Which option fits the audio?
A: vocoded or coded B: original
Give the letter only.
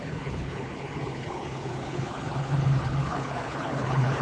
A